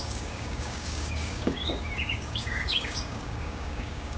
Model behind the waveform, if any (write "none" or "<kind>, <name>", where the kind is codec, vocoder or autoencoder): codec, DAC